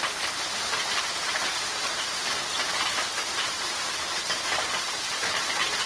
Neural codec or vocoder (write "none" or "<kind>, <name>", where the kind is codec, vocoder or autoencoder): vocoder, BigVGAN v2